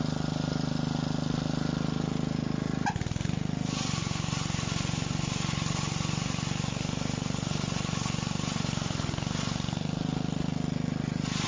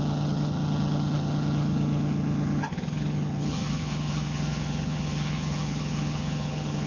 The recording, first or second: first